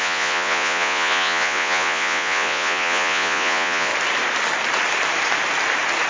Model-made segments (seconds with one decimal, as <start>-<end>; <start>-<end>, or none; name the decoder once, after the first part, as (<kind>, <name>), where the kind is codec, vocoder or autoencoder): 0.0-3.9 (vocoder, Vocos)